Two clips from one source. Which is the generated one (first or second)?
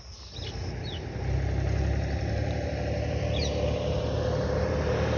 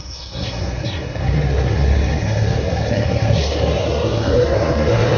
second